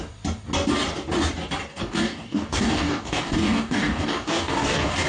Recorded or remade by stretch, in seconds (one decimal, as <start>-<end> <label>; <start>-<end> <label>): 0.0-1.7 recorded; 1.7-5.1 remade